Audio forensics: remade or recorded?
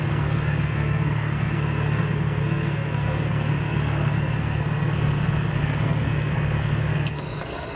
remade